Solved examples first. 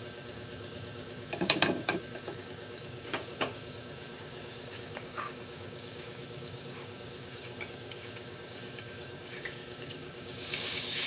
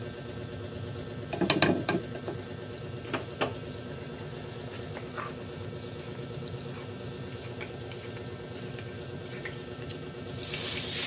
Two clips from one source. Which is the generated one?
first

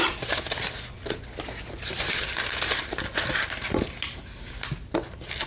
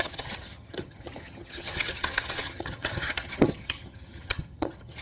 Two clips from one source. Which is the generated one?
second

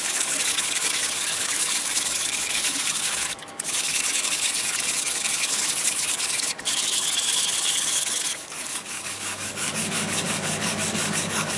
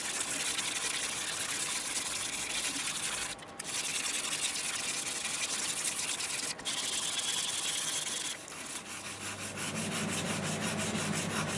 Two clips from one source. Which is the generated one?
first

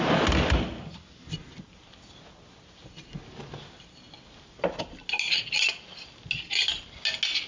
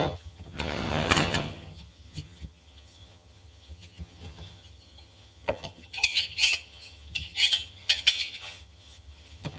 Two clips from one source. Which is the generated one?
second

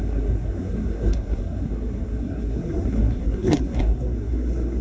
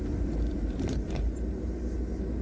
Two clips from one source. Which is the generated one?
first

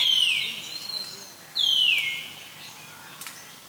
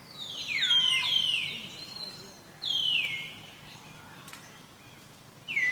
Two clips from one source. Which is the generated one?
second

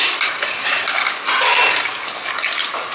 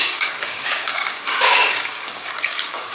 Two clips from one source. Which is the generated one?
second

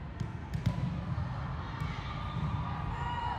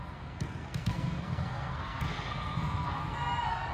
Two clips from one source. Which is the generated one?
second